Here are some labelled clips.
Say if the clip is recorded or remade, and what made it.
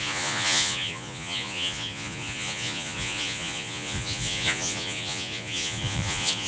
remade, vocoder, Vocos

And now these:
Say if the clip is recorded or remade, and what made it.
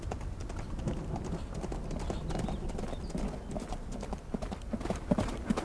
recorded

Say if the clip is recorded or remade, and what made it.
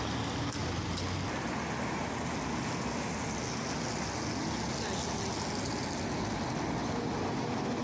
recorded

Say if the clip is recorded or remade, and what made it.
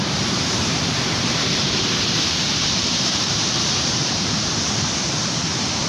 remade, vocoder, BigVGAN v2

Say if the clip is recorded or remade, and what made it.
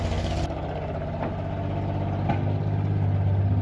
recorded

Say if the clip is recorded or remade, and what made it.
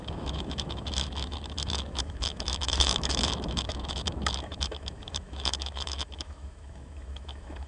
remade, autoencoder, DAC-VAE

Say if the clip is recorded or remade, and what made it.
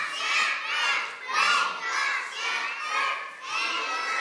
recorded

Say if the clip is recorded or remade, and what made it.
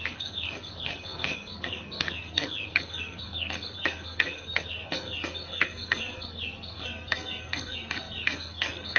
remade, codec, SNAC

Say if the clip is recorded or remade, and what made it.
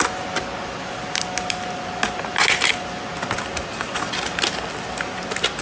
recorded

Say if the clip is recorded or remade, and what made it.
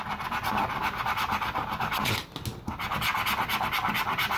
recorded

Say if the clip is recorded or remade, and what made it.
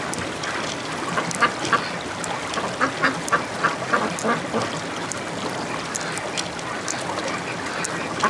recorded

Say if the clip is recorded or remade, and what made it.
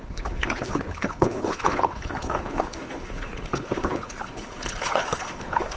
remade, codec, HILCodec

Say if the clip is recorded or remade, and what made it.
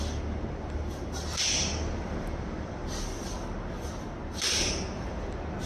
recorded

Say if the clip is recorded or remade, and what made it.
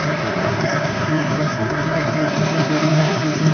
remade, codec, SNAC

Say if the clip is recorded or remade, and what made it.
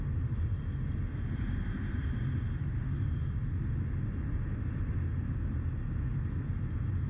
recorded